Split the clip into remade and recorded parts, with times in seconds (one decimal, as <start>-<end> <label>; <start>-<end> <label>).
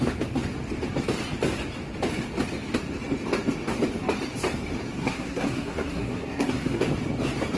0.0-5.0 recorded; 5.0-6.8 remade; 6.8-7.6 recorded